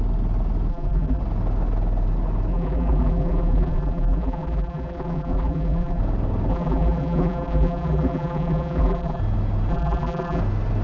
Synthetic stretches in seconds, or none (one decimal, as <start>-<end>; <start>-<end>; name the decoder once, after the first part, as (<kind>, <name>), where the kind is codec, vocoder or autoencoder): 0.7-1.2 (vocoder, BigVGAN v2); 2.5-6.0; 6.5-9.2; 9.7-10.4